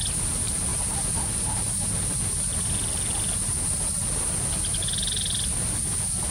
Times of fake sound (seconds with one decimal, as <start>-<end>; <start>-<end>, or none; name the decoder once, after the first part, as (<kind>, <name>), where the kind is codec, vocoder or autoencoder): none